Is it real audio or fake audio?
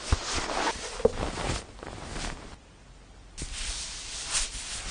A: real